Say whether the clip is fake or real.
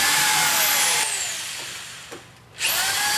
fake